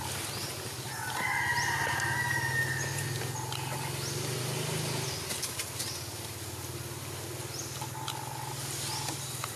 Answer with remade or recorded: recorded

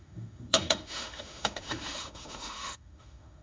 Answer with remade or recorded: remade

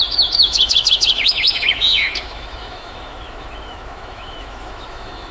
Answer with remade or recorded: remade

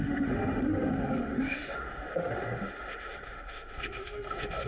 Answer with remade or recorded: remade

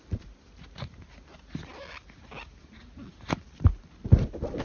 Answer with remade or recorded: recorded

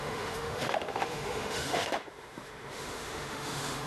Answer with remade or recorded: remade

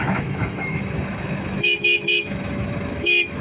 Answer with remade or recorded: remade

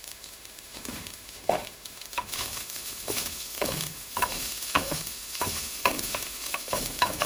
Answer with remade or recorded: remade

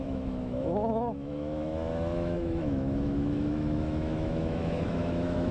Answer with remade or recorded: remade